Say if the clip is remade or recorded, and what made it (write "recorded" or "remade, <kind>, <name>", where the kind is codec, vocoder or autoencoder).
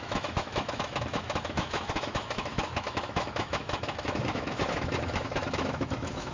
remade, autoencoder, DAC-VAE